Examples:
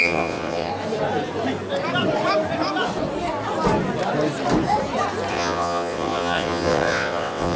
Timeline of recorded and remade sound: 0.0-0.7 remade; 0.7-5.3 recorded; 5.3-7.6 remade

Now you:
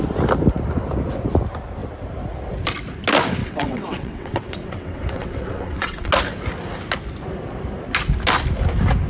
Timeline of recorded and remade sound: 0.0-3.4 recorded; 3.4-6.1 remade; 6.1-9.1 recorded

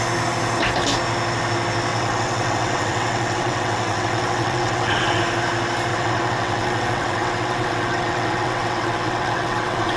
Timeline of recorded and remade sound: 0.0-1.9 recorded; 1.9-5.2 remade; 5.2-5.9 recorded; 5.9-10.0 remade

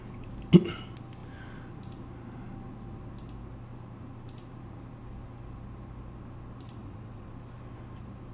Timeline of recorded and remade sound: 0.0-6.8 recorded; 6.8-7.3 remade; 7.3-8.3 recorded

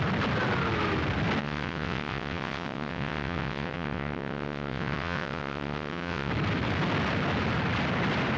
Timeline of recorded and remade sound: 0.0-1.4 recorded; 1.4-6.3 remade; 6.3-8.4 recorded

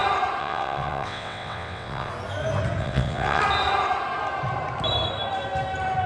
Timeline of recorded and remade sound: 0.0-0.4 recorded; 0.4-2.1 remade; 2.1-2.8 recorded; 2.8-3.4 remade; 3.4-6.1 recorded

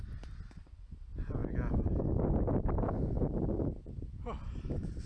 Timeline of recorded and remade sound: 0.0-5.1 recorded

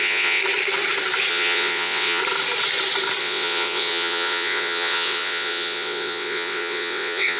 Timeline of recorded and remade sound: 0.0-0.4 remade; 0.4-1.3 recorded; 1.3-2.2 remade; 2.2-3.2 recorded; 3.2-7.4 remade